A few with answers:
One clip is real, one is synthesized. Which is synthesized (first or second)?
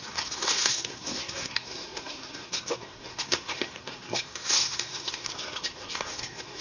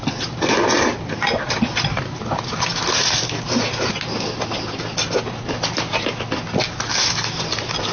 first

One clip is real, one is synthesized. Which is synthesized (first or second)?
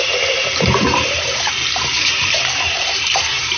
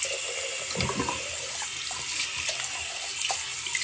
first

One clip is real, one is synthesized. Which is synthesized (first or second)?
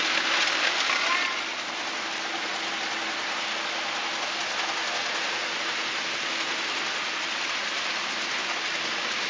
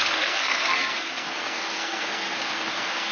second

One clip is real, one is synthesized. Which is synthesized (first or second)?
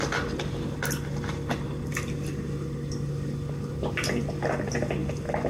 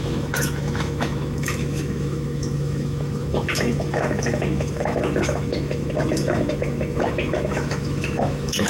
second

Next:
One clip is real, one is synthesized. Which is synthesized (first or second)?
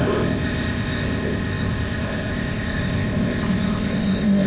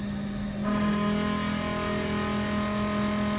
first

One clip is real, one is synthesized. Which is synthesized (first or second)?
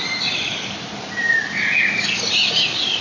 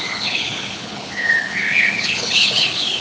second